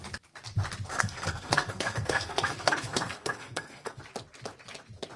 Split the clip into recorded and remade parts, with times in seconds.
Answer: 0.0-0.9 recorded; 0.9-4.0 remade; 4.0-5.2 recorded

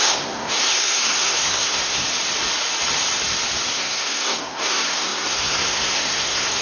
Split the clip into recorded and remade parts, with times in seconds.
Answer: 0.0-2.0 remade; 2.0-3.7 recorded; 3.7-6.6 remade

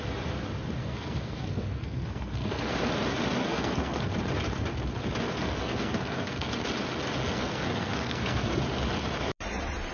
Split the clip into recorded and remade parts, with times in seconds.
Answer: 0.0-0.8 recorded; 0.8-2.9 remade; 2.9-3.4 recorded; 3.4-4.0 remade; 4.0-5.6 recorded; 5.6-6.5 remade; 6.5-7.2 recorded; 7.2-8.6 remade; 8.6-9.9 recorded

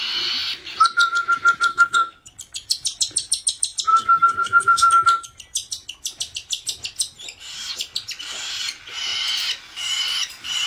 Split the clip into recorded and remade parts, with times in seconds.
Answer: 0.0-1.7 recorded; 1.7-2.3 remade; 2.3-3.9 recorded; 3.9-4.9 remade; 4.9-10.7 recorded

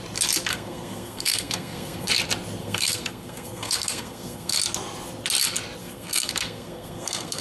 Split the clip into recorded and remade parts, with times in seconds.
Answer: 0.0-0.5 recorded; 0.5-2.1 remade; 2.1-2.6 recorded; 2.6-4.6 remade; 4.6-5.8 recorded; 5.8-7.4 remade

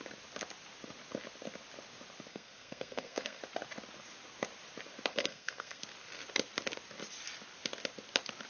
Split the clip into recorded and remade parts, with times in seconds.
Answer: 0.0-2.3 recorded; 2.3-3.4 remade; 3.4-5.1 recorded; 5.1-5.8 remade; 5.8-8.5 recorded

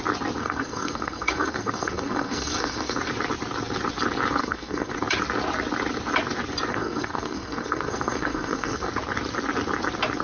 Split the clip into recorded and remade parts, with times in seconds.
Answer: 0.0-0.4 recorded; 0.4-3.0 remade; 3.0-4.4 recorded; 4.4-4.9 remade; 4.9-6.7 recorded; 6.7-8.9 remade; 8.9-10.2 recorded